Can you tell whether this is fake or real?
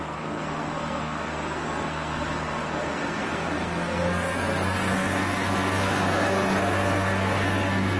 fake